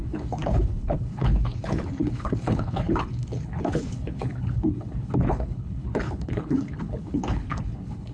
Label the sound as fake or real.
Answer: fake